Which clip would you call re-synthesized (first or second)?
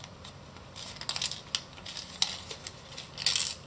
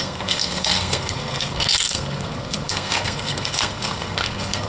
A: second